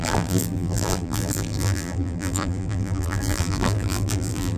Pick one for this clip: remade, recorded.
remade